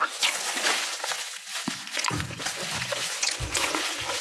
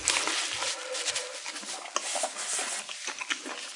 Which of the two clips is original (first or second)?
second